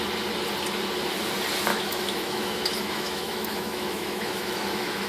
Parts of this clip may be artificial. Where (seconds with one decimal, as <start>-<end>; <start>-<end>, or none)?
1.7-5.1